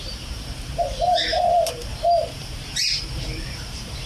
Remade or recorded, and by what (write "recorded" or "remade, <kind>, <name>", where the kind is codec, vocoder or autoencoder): remade, vocoder, BigVGAN v2